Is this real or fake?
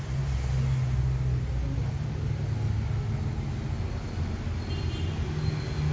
real